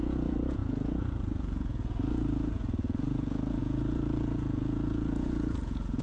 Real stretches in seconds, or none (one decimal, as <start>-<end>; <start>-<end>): none